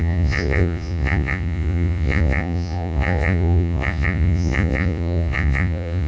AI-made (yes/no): yes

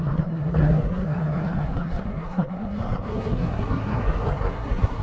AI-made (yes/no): yes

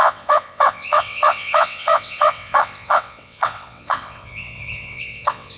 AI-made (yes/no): yes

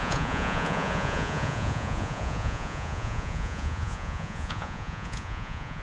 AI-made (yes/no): yes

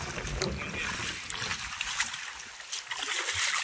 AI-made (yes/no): no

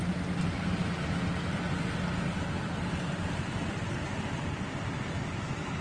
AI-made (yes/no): no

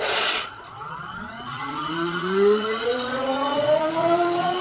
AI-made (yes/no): yes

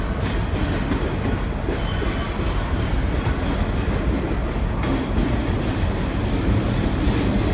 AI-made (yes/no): no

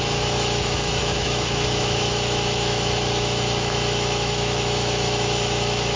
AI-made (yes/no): yes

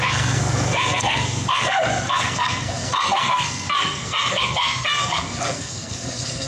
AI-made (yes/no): yes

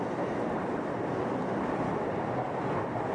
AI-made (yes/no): no